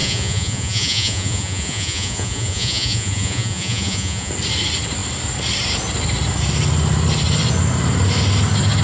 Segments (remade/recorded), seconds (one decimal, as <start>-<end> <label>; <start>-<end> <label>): 0.0-4.3 remade; 4.3-8.8 recorded